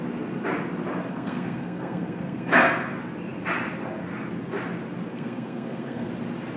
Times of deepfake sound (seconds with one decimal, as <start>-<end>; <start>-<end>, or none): 1.1-2.5; 5.1-6.1